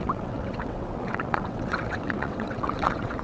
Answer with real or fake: fake